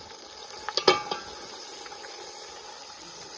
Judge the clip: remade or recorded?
recorded